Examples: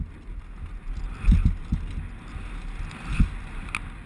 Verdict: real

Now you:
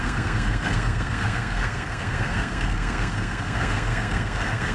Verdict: fake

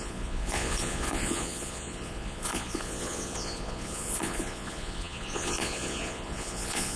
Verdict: fake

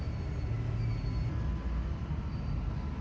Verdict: real